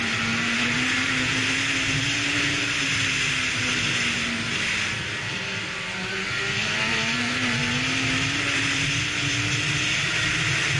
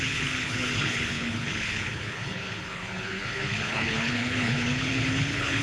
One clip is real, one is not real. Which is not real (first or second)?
second